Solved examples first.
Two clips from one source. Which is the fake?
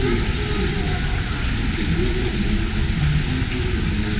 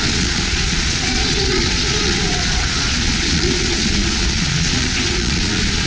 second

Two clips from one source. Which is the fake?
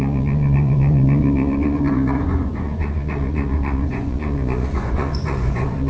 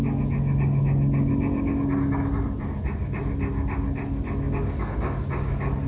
first